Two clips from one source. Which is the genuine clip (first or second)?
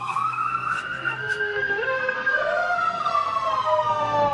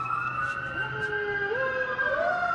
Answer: second